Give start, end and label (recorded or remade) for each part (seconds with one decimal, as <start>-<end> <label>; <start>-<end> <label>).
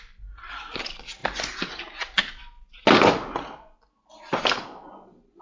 0.0-5.4 recorded